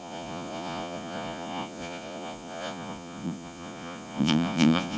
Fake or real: fake